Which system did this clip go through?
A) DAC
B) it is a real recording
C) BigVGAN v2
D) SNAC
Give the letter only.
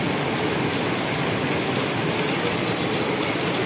B